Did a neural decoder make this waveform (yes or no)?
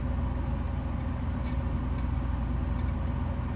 no